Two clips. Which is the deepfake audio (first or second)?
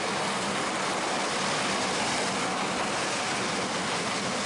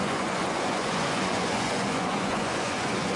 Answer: second